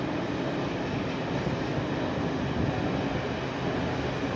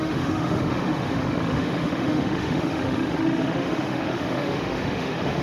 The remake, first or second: second